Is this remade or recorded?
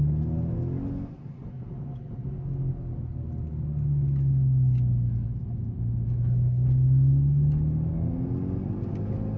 recorded